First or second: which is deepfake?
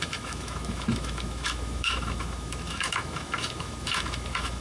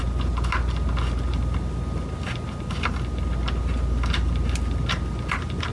first